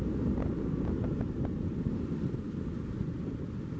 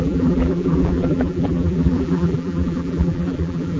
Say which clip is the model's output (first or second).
second